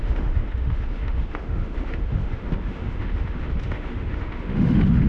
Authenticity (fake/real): fake